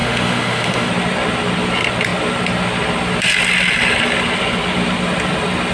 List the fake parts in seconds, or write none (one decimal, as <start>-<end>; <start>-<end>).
0.0-0.9